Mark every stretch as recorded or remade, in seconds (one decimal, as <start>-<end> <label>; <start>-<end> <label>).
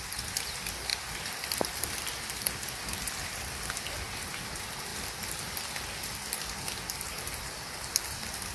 0.0-8.5 recorded